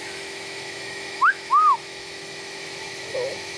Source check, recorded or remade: remade